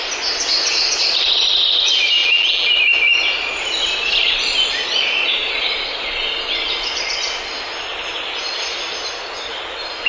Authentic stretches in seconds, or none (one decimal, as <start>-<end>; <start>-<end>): 0.0-2.2; 2.7-10.1